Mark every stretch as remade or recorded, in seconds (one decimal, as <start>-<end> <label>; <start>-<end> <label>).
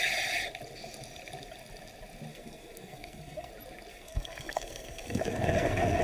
0.0-2.3 recorded; 2.3-3.5 remade; 3.5-3.9 recorded; 3.9-6.0 remade